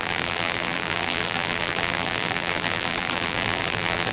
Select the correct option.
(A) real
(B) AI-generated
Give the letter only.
B